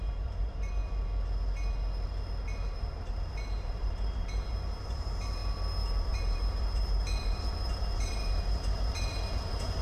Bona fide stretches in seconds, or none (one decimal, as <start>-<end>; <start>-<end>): 0.8-2.7; 5.4-6.0